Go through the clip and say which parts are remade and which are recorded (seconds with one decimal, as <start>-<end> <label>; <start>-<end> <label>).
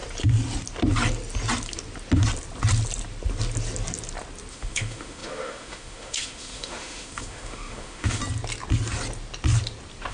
0.0-4.5 recorded; 4.5-8.2 remade; 8.2-10.1 recorded